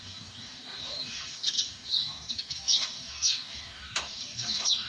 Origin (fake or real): fake